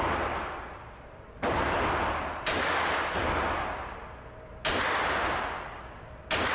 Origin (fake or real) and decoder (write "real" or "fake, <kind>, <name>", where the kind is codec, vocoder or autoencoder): real